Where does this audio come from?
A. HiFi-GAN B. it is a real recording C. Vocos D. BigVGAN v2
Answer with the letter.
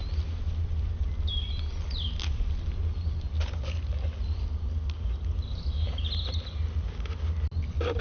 B